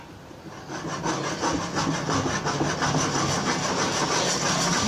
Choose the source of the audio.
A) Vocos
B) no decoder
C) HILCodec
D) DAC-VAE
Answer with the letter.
B